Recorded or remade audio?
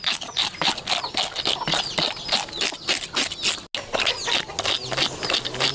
recorded